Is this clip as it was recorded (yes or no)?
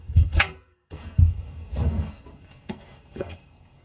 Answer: no